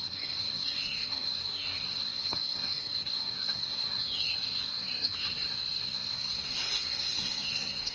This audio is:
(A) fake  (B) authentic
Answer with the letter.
A